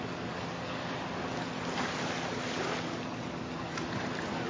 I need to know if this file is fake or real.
real